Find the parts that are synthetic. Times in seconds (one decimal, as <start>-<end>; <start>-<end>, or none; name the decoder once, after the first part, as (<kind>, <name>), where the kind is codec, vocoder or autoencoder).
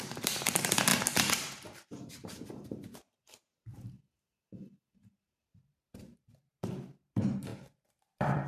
0.0-3.5 (vocoder, BigVGAN v2); 5.1-8.5